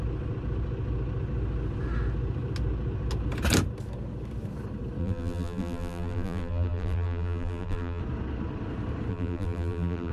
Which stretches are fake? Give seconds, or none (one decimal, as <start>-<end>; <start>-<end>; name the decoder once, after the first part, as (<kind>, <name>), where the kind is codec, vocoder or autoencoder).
5.0-8.0 (vocoder, BigVGAN v2); 9.1-10.1